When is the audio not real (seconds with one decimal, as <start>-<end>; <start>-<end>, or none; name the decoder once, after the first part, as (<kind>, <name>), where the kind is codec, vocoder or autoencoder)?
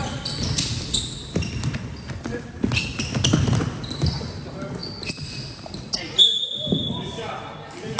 0.0-4.8 (vocoder, BigVGAN v2); 6.0-8.0